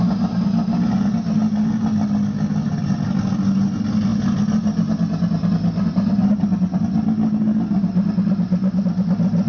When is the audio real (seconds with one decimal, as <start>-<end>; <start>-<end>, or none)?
0.0-9.5